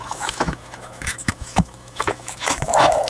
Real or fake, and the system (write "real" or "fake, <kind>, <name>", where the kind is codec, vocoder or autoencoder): fake, autoencoder, DAC-VAE